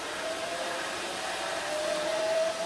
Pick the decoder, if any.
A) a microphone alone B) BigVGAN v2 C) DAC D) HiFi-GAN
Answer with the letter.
B